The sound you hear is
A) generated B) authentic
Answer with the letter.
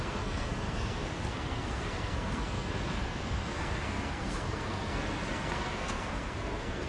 A